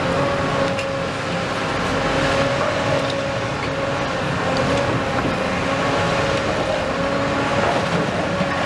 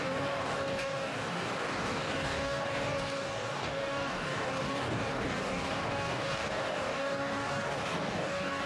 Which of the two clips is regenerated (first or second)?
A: second